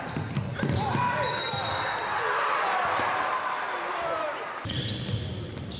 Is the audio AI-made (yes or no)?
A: no